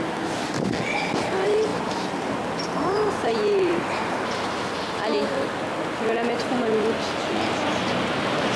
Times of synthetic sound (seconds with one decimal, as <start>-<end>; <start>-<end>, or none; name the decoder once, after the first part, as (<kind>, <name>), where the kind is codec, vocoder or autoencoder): 1.7-4.1 (vocoder, BigVGAN v2)